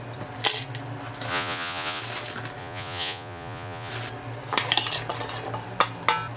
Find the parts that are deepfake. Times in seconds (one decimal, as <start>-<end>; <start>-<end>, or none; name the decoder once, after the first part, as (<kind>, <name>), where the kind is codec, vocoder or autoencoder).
1.3-2.0 (vocoder, Vocos); 2.6-3.9